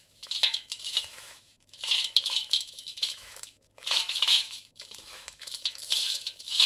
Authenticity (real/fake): fake